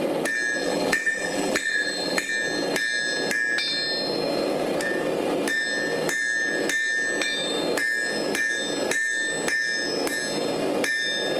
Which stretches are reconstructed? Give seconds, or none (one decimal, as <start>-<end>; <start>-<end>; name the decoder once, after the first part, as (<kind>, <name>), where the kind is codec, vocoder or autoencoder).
0.6-2.3 (vocoder, BigVGAN v2)